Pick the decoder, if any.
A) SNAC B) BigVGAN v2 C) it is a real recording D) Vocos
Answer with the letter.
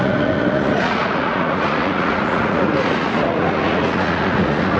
D